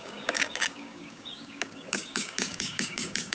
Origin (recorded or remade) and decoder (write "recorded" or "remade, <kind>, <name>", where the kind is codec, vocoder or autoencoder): remade, codec, DAC